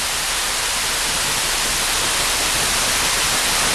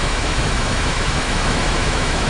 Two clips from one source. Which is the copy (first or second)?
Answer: second